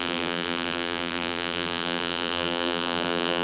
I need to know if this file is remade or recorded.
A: remade